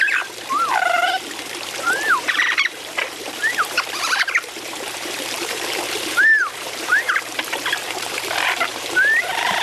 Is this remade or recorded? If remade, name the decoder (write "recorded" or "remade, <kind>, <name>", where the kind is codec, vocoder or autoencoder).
remade, vocoder, BigVGAN v2